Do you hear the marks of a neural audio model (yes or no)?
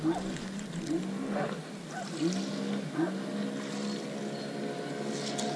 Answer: no